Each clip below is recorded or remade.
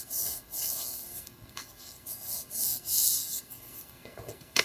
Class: remade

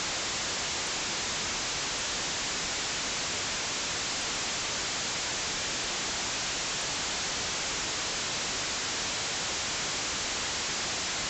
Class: recorded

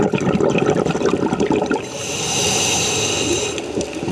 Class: recorded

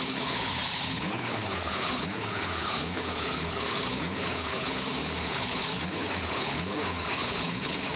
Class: remade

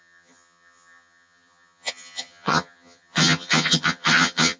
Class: remade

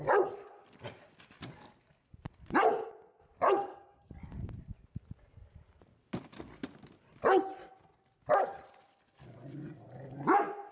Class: recorded